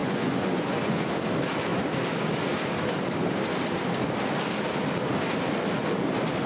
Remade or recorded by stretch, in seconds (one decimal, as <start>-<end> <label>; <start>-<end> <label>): 0.0-1.1 remade; 1.1-6.5 recorded